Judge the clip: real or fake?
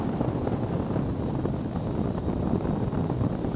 real